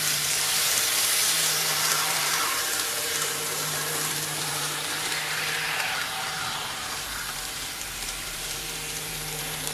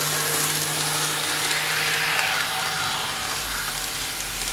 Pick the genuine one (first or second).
second